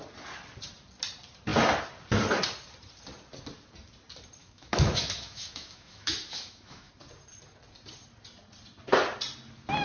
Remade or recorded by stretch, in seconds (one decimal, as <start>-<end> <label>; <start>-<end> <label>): 0.0-4.4 recorded; 4.4-6.9 remade; 6.9-9.8 recorded